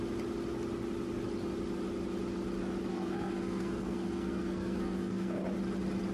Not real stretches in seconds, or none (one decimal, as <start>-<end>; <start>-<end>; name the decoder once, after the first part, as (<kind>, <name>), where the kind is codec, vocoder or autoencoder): 2.9-5.4 (codec, SNAC)